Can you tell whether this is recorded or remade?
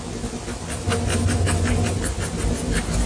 recorded